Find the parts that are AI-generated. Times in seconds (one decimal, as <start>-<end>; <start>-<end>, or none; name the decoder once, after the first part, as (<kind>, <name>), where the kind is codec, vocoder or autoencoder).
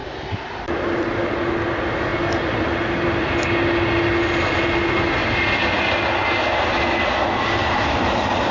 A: 0.0-1.5 (vocoder, BigVGAN v2); 7.6-8.5